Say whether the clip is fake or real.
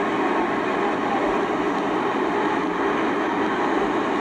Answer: real